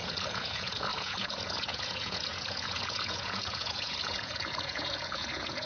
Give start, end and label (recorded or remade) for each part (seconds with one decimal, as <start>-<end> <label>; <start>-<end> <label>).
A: 0.0-5.7 remade